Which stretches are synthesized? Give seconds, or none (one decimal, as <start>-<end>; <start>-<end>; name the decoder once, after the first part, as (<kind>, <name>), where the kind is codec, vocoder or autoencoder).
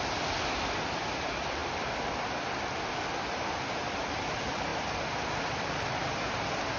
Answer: none